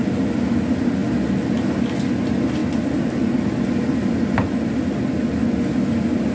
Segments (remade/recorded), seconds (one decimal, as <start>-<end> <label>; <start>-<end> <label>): 0.0-6.3 recorded